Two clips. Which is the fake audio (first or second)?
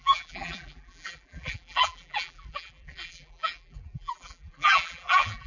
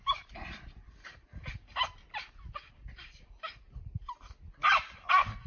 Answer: first